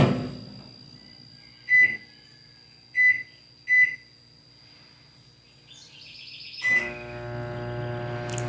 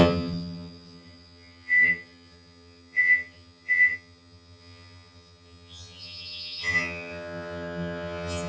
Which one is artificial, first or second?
second